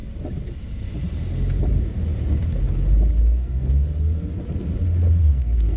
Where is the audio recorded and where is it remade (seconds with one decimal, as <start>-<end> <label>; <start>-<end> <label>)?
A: 0.0-3.2 recorded; 3.2-3.9 remade; 3.9-5.2 recorded; 5.2-5.8 remade